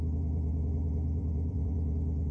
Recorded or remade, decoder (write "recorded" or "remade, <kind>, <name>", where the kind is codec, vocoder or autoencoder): remade, vocoder, Vocos